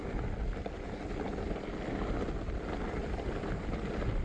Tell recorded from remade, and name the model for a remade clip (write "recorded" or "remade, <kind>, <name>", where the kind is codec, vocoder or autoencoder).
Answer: recorded